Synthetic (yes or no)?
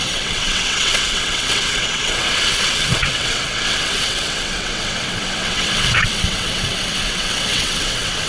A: yes